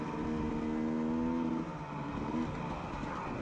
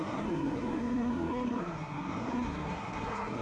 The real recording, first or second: first